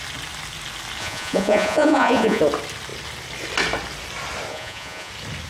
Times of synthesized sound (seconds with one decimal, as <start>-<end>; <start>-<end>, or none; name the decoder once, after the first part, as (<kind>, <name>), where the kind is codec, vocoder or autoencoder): 1.0-2.4 (vocoder, Vocos); 4.5-5.1